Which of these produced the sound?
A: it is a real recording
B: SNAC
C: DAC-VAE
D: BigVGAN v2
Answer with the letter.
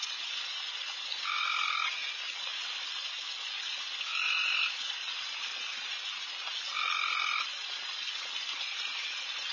A